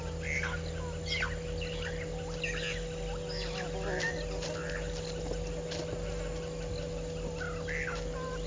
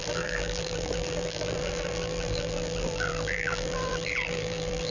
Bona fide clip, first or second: first